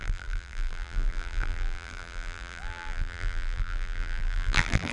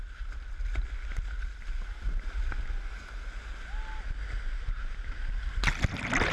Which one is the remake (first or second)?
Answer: first